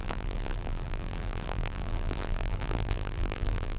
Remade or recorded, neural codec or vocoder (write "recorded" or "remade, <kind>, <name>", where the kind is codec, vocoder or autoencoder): remade, vocoder, BigVGAN v2